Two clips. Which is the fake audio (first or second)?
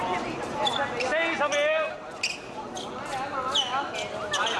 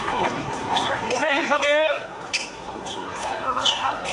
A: second